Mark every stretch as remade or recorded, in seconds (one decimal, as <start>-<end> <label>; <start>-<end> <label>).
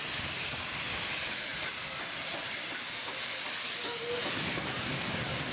0.0-5.5 recorded